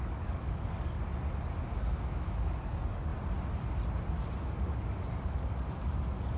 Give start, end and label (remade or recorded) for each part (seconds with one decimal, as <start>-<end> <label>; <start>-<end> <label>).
0.0-1.0 remade; 1.0-1.7 recorded; 1.7-3.1 remade; 3.1-4.4 recorded; 4.4-6.4 remade